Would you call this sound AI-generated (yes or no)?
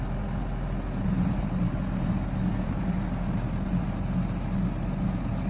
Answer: no